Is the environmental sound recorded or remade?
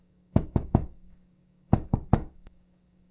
remade